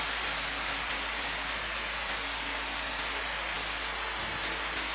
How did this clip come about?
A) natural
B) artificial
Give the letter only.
A